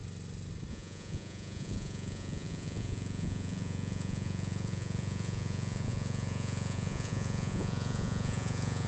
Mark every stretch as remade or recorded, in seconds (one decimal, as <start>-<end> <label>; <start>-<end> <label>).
0.0-0.7 recorded; 0.7-8.9 remade